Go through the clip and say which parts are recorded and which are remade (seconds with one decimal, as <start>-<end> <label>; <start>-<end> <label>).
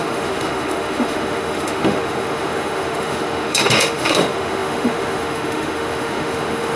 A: 0.0-6.8 remade